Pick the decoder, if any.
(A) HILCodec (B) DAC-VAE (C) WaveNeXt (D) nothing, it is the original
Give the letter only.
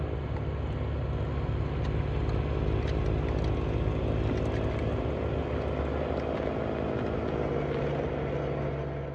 D